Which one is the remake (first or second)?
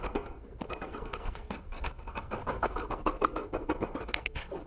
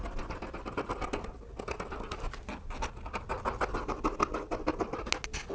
first